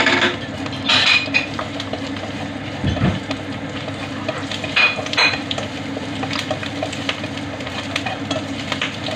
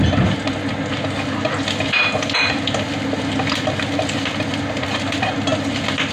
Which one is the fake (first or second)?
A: first